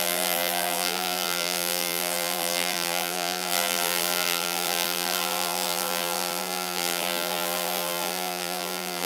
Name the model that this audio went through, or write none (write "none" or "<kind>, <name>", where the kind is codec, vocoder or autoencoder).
vocoder, BigVGAN v2